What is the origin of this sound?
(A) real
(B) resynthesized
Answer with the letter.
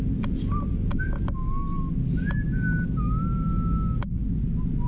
A